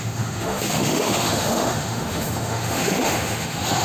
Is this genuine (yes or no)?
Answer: no